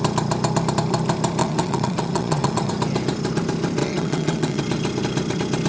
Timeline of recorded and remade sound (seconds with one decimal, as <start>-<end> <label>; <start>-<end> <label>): 0.0-1.4 recorded; 1.4-2.7 remade; 2.7-3.8 recorded; 3.8-4.6 remade; 4.6-5.7 recorded